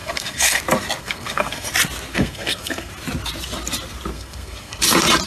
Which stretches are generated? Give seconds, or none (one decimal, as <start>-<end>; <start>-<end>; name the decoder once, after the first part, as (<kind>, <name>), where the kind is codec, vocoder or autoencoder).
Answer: 0.0-0.6 (codec, SNAC); 1.0-1.7; 2.1-2.9; 4.1-4.8